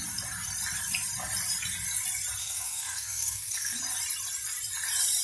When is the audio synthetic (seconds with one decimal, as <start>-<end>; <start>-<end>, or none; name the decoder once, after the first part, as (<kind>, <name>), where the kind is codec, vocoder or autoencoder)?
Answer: 2.4-3.8 (codec, SNAC)